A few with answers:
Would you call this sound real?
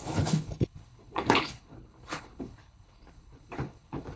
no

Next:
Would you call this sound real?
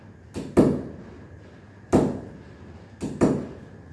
yes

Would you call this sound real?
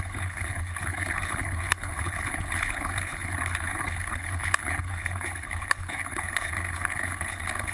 no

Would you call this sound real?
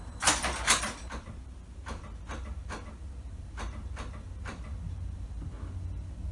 yes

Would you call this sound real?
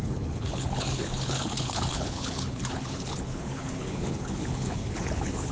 no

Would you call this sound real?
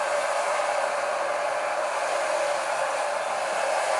yes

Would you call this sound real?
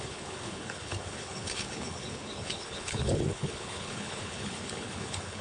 no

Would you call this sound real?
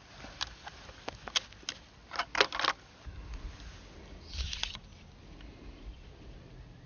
yes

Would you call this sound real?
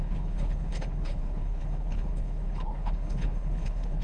no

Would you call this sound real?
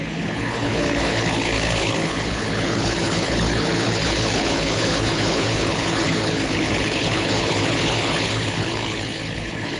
no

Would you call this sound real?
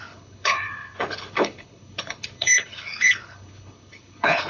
no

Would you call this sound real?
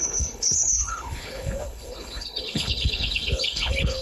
no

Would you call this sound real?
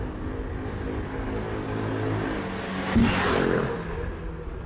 yes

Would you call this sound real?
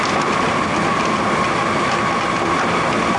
yes